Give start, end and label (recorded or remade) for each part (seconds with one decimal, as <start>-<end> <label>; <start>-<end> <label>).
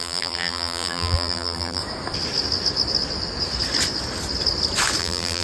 0.0-1.8 remade; 1.8-5.0 recorded; 5.0-5.4 remade